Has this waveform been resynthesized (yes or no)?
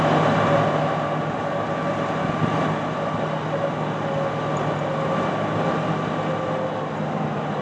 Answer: no